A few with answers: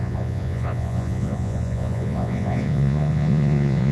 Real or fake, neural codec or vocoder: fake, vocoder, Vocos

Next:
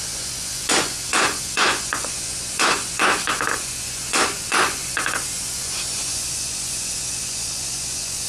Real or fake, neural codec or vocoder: fake, vocoder, Vocos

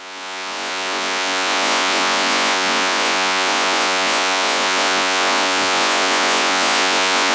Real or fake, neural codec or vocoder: fake, vocoder, Vocos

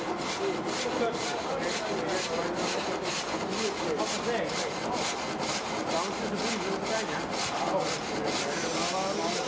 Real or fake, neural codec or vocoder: real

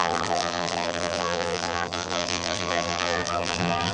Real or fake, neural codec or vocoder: fake, vocoder, BigVGAN v2